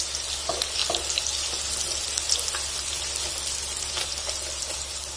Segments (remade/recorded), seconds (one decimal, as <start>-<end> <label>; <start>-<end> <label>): 0.0-5.2 recorded